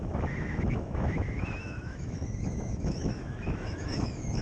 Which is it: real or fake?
fake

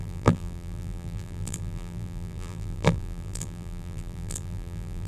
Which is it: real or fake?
fake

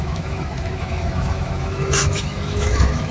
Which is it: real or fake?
fake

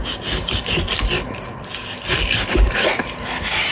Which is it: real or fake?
real